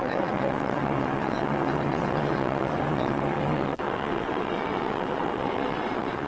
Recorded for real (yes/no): no